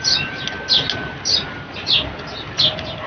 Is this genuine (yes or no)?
yes